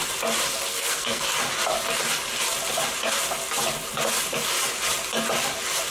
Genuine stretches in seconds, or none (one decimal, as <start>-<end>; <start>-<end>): 0.0-0.7; 1.2-5.9